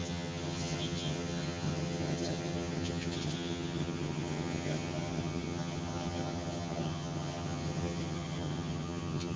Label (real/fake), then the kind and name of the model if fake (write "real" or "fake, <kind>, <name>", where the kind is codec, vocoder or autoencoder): fake, vocoder, HiFi-GAN